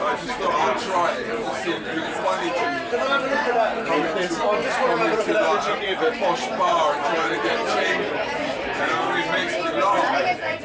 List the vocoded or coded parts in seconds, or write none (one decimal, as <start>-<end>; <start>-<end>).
0.0-9.4